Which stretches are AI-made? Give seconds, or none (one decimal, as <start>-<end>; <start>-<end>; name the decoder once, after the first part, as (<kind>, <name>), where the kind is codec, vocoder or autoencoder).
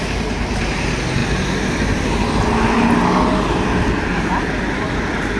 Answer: none